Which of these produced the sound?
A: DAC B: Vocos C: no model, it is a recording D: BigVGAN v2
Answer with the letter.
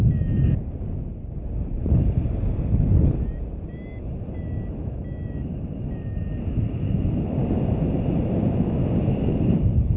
C